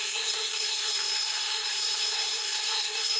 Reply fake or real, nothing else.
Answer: fake